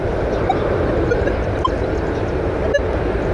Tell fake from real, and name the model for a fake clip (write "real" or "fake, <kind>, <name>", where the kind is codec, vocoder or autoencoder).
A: real